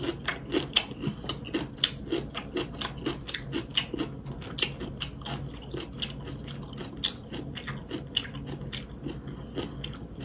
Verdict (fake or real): real